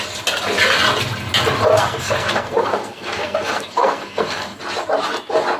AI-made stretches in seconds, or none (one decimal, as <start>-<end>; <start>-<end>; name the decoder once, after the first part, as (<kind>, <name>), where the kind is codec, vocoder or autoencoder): 1.7-4.6 (codec, SNAC)